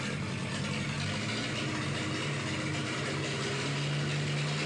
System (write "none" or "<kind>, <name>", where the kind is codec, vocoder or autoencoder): none